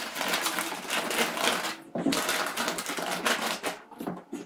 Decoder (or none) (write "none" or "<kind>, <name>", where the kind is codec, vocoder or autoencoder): none